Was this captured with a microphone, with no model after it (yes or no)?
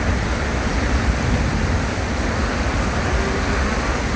no